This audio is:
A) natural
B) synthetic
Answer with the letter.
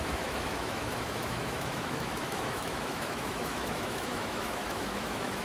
B